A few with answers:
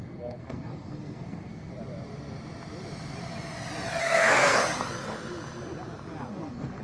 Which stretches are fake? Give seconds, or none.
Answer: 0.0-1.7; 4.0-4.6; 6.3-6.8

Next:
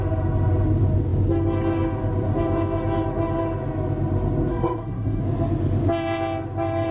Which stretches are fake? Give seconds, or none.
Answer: 4.5-5.2

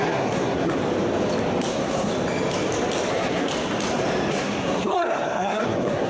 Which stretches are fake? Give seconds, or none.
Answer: 0.0-0.8; 1.7-2.1; 3.1-3.5; 4.3-6.1